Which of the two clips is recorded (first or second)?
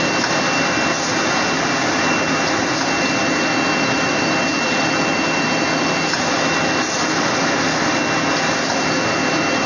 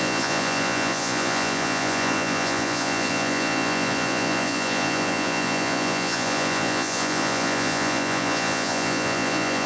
first